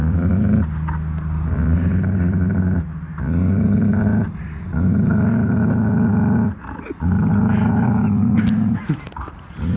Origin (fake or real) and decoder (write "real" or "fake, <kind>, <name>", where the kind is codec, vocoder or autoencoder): real